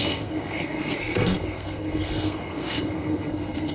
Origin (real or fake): fake